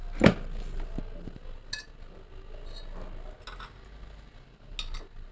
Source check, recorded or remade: recorded